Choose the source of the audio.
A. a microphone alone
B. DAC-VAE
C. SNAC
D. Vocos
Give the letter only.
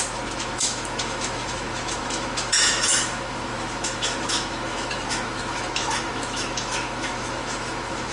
B